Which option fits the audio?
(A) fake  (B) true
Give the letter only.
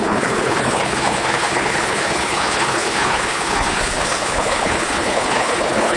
A